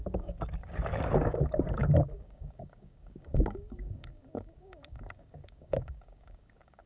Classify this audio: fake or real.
fake